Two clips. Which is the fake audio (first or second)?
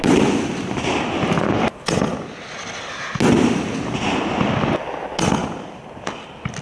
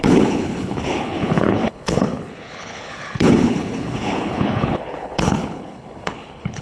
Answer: second